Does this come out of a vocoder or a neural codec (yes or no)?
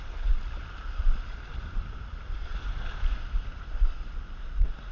no